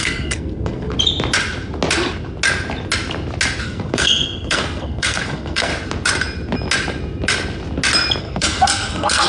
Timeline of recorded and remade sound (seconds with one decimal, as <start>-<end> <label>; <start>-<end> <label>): 0.0-0.9 remade; 0.9-3.6 recorded; 3.6-5.7 remade; 5.7-8.2 recorded; 8.2-9.3 remade